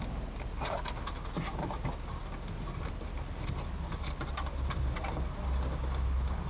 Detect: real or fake real